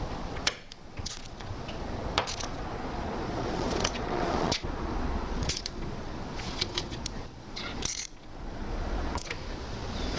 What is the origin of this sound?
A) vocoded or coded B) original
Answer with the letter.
A